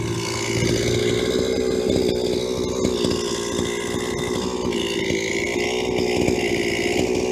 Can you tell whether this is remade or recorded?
recorded